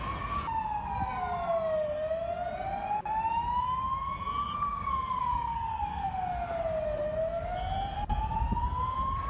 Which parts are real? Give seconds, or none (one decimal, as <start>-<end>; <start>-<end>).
0.0-5.2; 6.1-9.3